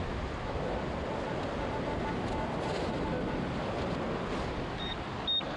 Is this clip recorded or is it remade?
recorded